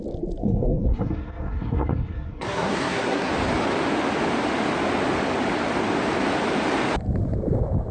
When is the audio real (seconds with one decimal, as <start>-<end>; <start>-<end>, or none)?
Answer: 0.0-0.4; 3.3-7.9